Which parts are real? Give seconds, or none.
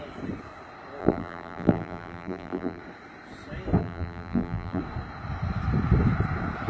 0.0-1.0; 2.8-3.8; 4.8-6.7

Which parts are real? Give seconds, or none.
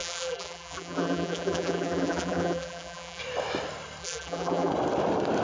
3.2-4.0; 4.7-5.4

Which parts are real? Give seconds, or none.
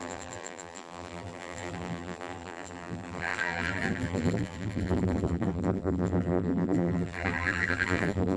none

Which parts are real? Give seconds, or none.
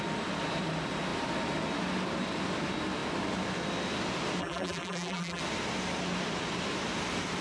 0.0-4.4; 5.4-7.4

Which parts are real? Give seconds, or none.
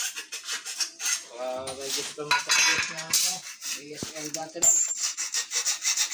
0.0-2.7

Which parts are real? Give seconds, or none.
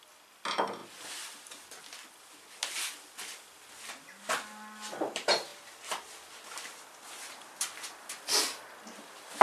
0.0-5.5; 8.8-9.4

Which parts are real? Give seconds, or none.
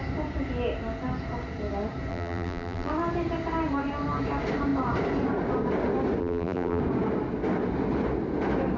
0.0-2.1; 2.9-6.2; 6.8-8.8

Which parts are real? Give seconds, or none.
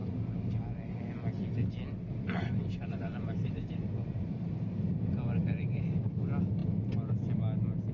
0.0-2.8; 6.0-7.9